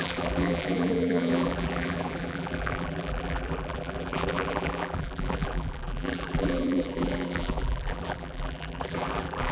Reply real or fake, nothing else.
fake